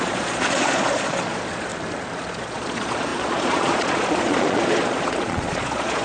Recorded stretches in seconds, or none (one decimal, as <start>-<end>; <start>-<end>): 1.7-2.2